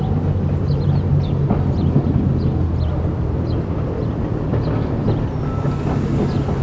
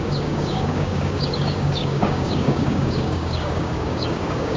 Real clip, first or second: first